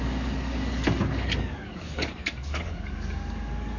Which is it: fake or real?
fake